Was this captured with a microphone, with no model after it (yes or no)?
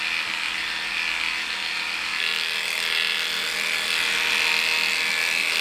no